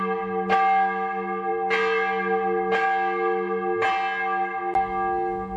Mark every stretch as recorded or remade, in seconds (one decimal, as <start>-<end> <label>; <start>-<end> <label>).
0.0-5.6 recorded